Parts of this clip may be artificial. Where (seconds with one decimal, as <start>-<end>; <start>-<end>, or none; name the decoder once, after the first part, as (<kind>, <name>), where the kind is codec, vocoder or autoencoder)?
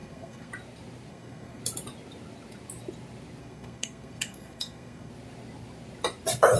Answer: 0.0-0.5 (codec, SNAC); 1.1-1.6; 3.4-5.1